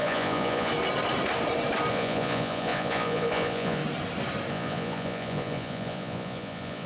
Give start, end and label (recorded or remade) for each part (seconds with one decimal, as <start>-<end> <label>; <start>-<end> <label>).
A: 0.0-0.7 remade; 0.7-1.9 recorded; 1.9-3.8 remade; 3.8-4.5 recorded; 4.5-6.9 remade